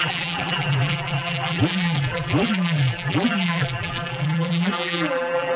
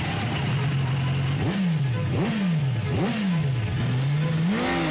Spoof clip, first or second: first